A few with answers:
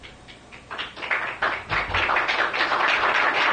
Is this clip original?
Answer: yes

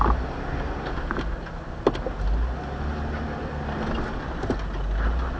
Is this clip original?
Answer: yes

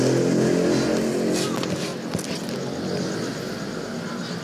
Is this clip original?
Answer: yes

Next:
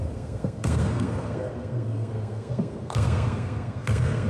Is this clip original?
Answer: no